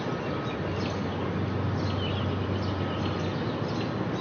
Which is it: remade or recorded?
recorded